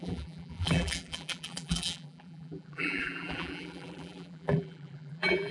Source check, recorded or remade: remade